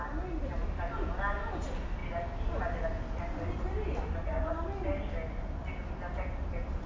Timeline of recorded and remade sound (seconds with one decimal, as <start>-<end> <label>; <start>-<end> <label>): 0.0-6.9 recorded